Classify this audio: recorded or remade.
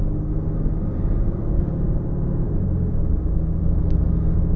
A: recorded